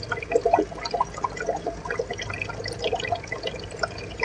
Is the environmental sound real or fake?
real